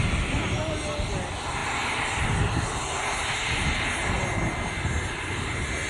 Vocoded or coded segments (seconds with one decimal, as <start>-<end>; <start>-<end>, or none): none